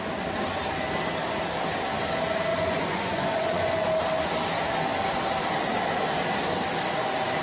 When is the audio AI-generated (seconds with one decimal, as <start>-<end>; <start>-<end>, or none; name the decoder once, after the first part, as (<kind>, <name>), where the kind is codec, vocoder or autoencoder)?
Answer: 2.5-3.9 (vocoder, Vocos)

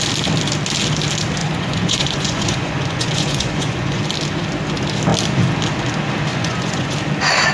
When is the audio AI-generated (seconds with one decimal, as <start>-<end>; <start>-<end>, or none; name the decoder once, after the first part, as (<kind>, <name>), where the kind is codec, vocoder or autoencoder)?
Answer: 1.4-4.0 (vocoder, Vocos); 6.3-6.9

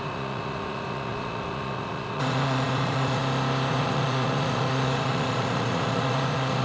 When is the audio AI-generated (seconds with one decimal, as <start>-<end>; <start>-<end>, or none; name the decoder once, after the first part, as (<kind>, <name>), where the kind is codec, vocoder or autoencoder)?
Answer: 0.0-3.2 (vocoder, Vocos); 3.7-6.6